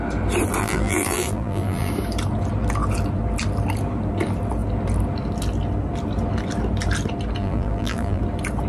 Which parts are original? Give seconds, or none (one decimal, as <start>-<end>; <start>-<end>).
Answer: 0.0-0.6; 1.9-7.4; 8.2-8.7